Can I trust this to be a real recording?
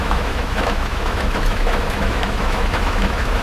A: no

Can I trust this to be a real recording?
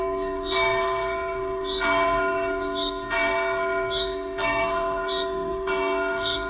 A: no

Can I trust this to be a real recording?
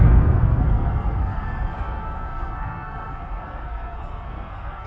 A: no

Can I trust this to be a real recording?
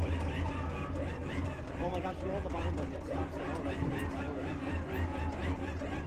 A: yes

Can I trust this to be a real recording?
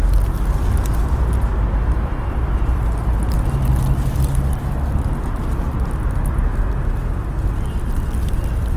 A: yes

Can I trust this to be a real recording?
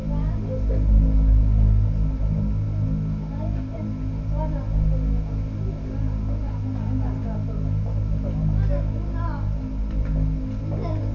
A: yes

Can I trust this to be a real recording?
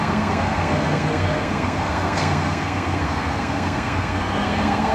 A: no